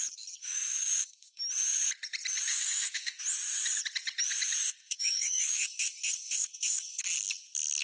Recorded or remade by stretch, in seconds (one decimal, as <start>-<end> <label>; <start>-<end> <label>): 0.0-0.4 recorded; 0.4-1.4 remade; 1.4-2.5 recorded; 2.5-3.2 remade; 3.2-4.6 recorded; 4.6-7.0 remade; 7.0-7.8 recorded